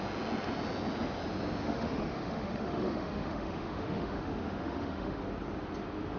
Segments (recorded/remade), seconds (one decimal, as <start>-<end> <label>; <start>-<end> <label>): 0.0-1.6 recorded; 1.6-5.2 remade; 5.2-6.2 recorded

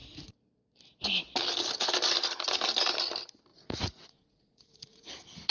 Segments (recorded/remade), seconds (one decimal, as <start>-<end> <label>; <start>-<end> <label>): 0.0-3.5 recorded; 3.5-5.1 remade; 5.1-5.5 recorded